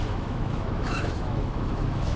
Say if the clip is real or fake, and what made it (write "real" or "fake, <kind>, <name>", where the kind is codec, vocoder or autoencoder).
fake, autoencoder, DAC-VAE